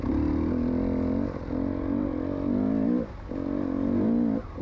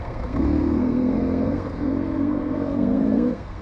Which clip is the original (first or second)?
first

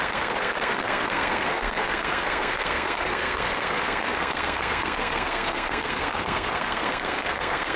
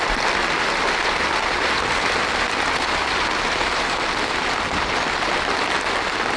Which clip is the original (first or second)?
second